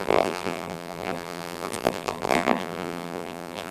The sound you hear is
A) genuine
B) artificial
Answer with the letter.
B